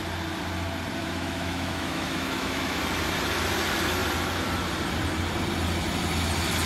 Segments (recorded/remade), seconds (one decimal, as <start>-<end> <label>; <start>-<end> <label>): 0.0-1.0 recorded; 1.0-2.8 remade; 2.8-6.7 recorded